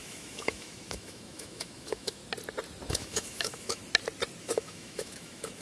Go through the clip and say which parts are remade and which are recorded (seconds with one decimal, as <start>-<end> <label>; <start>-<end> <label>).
0.0-2.2 remade; 2.2-2.9 recorded; 2.9-3.8 remade; 3.8-4.4 recorded; 4.4-5.6 remade